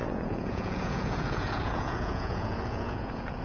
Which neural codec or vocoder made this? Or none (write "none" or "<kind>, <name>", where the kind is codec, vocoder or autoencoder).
vocoder, Vocos